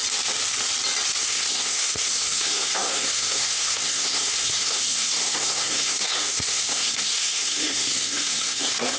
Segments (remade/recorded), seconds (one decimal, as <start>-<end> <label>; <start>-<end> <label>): 0.0-1.2 recorded; 1.2-9.0 remade